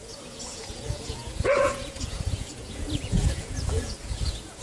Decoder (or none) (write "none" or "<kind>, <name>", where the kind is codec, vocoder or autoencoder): vocoder, Vocos